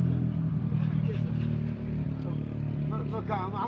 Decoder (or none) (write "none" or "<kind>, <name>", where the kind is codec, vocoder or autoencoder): none